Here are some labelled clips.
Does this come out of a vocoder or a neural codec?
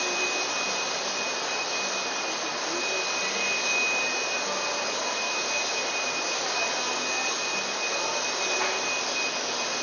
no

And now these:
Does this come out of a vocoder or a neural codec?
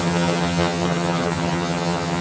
yes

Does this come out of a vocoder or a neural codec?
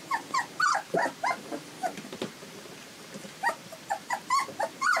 yes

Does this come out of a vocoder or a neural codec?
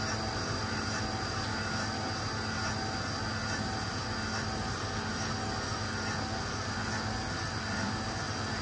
no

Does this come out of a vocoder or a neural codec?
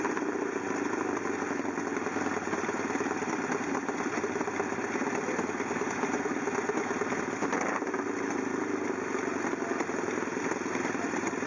no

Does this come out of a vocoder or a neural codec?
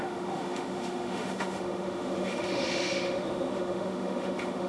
yes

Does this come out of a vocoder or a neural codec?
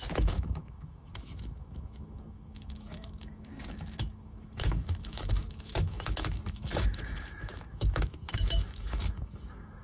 yes